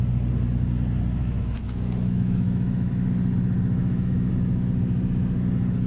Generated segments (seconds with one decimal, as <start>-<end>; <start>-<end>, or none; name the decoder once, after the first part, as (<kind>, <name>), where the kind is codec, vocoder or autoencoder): 1.2-2.9 (autoencoder, DAC-VAE); 3.8-4.3